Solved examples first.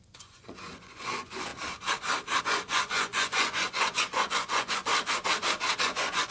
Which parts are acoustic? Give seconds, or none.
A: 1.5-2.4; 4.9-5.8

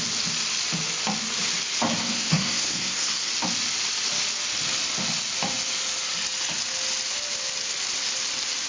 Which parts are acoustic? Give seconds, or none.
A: 0.0-2.0; 3.3-8.7

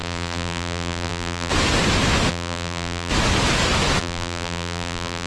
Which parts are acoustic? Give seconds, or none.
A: 1.5-2.3; 3.1-4.0